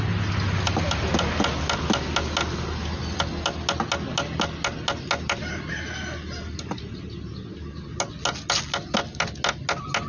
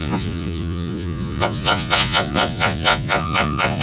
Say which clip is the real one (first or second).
first